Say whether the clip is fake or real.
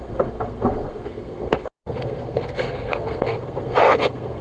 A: fake